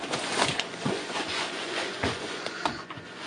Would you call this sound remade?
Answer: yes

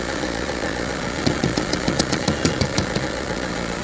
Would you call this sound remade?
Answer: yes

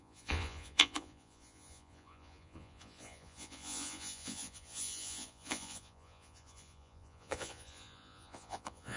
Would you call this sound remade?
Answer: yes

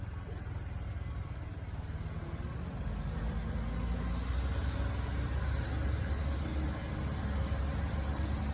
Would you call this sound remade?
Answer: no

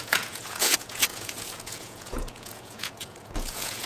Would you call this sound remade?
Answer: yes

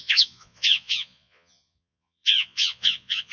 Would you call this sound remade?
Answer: yes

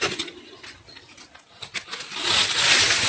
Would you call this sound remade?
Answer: no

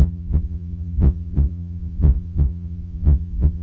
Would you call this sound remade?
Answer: yes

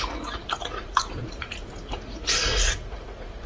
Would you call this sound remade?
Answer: yes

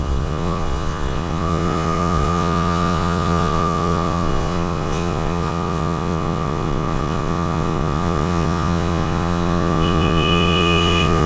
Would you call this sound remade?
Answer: yes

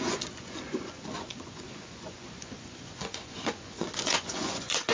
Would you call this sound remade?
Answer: yes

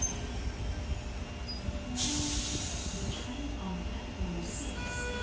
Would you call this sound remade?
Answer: no